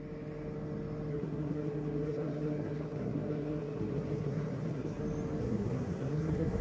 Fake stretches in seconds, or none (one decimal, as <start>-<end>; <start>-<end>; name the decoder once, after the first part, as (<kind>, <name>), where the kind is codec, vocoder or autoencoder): 1.1-5.0 (codec, SNAC); 5.4-6.6